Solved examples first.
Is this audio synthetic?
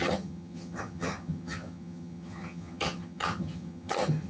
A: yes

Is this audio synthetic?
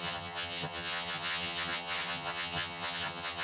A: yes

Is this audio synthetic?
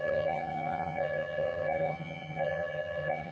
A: yes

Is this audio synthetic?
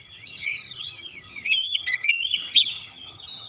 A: yes